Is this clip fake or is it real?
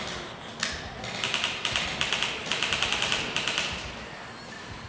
real